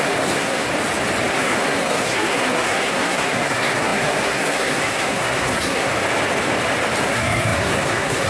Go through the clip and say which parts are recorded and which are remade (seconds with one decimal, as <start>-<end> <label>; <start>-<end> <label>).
0.0-0.7 remade; 0.7-1.3 recorded; 1.3-5.9 remade; 5.9-7.0 recorded; 7.0-8.3 remade

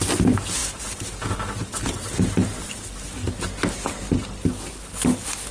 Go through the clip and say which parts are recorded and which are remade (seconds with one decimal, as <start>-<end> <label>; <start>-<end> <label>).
0.0-5.5 recorded

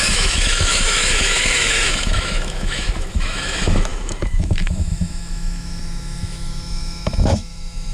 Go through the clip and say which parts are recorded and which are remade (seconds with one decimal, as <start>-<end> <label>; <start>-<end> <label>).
0.0-7.9 remade

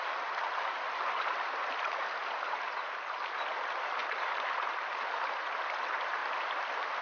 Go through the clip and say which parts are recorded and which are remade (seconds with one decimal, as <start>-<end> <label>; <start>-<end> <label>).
0.0-2.2 recorded; 2.2-3.0 remade; 3.0-4.0 recorded; 4.0-5.0 remade; 5.0-7.0 recorded

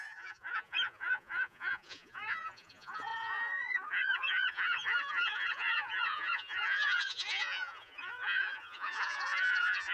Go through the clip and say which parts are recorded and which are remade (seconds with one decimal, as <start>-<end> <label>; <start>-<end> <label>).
0.0-9.9 remade

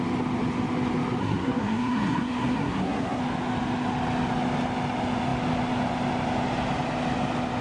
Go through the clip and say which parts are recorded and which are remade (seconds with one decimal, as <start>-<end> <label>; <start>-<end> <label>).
0.0-1.2 recorded; 1.2-3.2 remade; 3.2-7.6 recorded

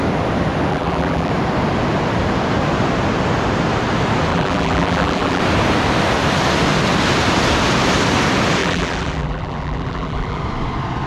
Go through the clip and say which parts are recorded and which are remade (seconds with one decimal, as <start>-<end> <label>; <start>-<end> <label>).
0.0-0.7 recorded; 0.7-1.3 remade; 1.3-4.3 recorded; 4.3-5.4 remade; 5.4-8.6 recorded; 8.6-10.4 remade; 10.4-11.1 recorded